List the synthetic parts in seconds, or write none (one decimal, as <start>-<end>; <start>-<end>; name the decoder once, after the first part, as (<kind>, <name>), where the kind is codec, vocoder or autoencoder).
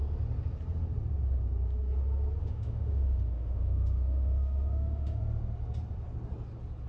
2.4-5.2 (autoencoder, DAC-VAE)